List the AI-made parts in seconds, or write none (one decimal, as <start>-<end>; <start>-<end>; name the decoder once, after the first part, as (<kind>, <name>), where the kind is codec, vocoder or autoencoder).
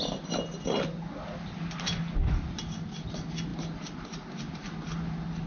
none